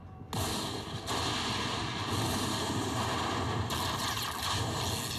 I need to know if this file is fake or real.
real